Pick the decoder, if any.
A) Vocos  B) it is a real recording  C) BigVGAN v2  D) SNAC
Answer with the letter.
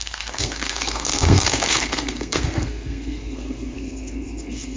D